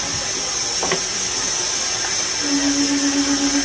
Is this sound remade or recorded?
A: recorded